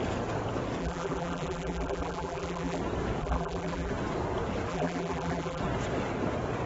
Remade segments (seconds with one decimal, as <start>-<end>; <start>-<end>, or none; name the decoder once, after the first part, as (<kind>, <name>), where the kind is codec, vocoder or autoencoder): 0.8-2.8 (vocoder, BigVGAN v2); 3.2-3.9; 4.7-5.6